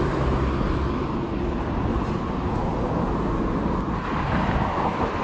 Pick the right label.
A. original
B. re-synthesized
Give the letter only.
A